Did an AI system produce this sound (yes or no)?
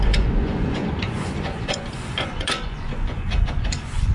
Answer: yes